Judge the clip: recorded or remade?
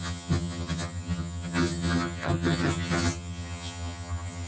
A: remade